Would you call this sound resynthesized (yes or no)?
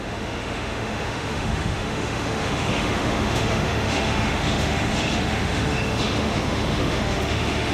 yes